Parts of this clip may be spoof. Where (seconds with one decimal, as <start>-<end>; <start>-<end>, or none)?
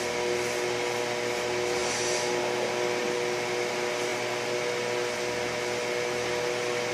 1.8-2.4; 3.0-3.5